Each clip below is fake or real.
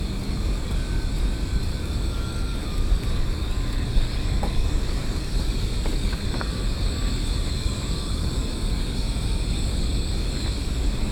fake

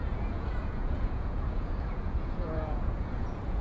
fake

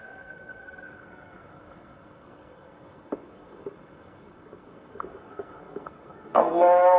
fake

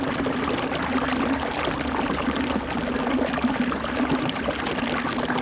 real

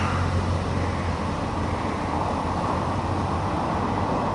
real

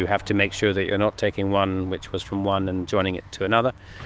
fake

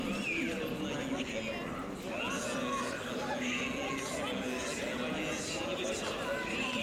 real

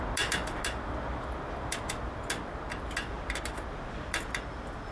real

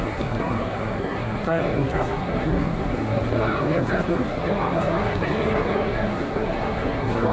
fake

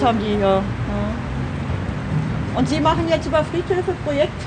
real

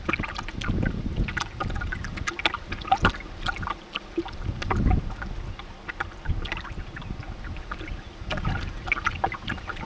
real